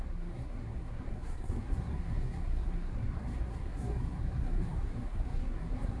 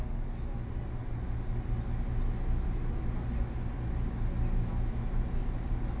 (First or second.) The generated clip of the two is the first